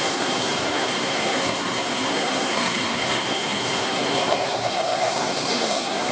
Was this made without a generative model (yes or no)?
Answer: no